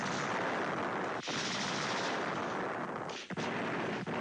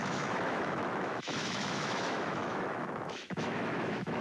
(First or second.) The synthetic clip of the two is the second